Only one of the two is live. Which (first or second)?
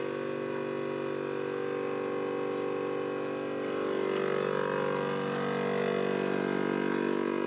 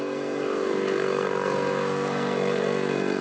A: first